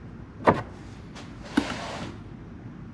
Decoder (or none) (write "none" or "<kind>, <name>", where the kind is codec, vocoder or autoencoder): none